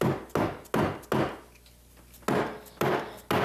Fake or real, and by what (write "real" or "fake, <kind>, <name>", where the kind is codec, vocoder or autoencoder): real